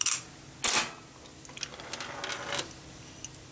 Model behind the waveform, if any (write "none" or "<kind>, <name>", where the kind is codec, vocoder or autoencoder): none